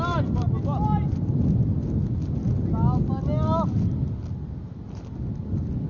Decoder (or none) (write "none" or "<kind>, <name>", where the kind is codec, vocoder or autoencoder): none